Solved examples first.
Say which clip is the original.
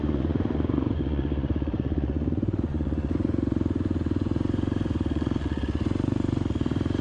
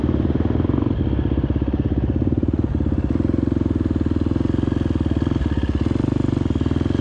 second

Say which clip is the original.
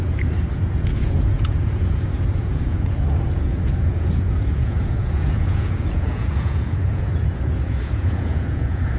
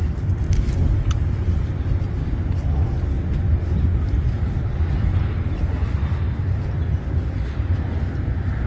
second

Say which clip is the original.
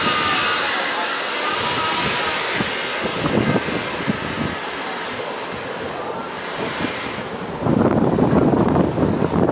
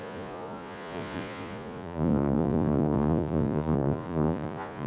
first